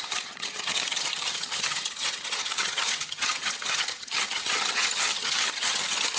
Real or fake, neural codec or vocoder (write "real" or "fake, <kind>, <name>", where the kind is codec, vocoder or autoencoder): fake, vocoder, HiFi-GAN